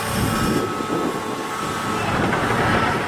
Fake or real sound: real